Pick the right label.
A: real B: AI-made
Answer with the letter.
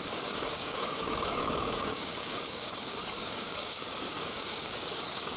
B